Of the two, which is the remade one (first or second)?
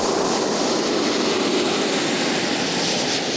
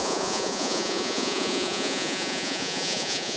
second